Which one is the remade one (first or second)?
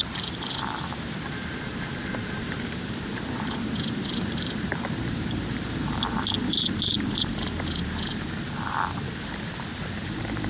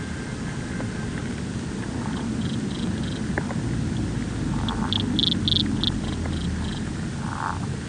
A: first